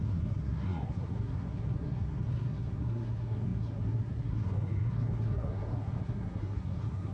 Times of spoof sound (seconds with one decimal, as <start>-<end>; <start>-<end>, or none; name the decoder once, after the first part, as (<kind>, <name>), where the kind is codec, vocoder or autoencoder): 0.0-7.1 (codec, SNAC)